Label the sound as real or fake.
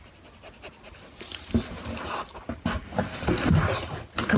real